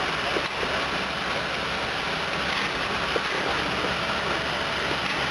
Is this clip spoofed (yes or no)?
no